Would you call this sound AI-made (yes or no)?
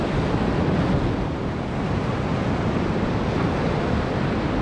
no